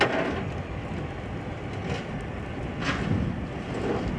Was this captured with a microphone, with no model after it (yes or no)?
yes